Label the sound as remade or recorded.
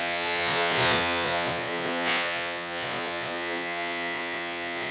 remade